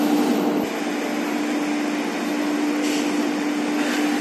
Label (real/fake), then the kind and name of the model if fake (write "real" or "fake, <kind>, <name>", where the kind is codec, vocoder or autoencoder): real